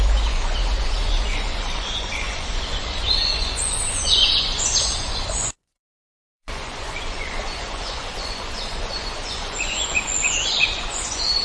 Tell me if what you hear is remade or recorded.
remade